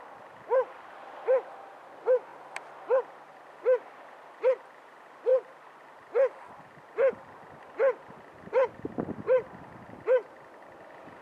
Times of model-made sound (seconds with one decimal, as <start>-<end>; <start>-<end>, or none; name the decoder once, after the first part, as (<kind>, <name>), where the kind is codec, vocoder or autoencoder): none